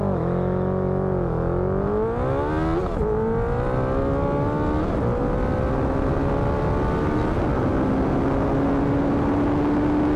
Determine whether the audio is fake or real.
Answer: real